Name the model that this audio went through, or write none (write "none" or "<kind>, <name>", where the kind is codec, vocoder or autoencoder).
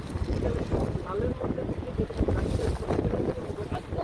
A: none